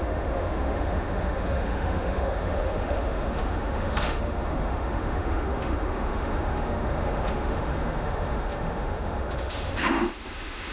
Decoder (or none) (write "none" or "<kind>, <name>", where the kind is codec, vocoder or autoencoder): autoencoder, DAC-VAE